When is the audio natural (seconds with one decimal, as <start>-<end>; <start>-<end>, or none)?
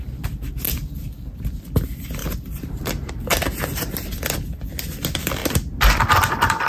0.0-2.2; 3.1-6.7